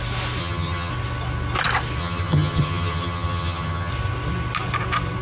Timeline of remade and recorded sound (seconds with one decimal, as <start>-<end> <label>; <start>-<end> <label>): 0.0-0.4 recorded; 0.4-0.9 remade; 0.9-2.0 recorded; 2.0-3.9 remade; 3.9-5.2 recorded